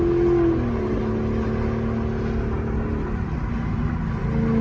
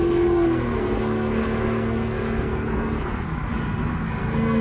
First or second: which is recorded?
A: first